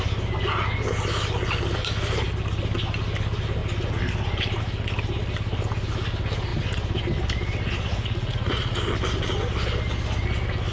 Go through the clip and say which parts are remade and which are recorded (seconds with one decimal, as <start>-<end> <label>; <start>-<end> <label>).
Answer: 0.0-7.9 recorded; 7.9-8.8 remade; 8.8-10.7 recorded